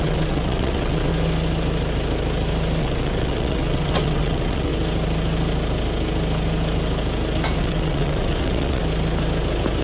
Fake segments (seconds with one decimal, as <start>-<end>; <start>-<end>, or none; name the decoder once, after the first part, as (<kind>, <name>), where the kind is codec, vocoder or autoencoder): 0.0-1.1 (vocoder, WaveNeXt); 2.8-4.7; 7.6-8.8